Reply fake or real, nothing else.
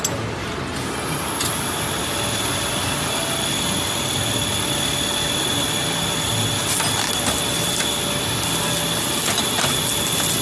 real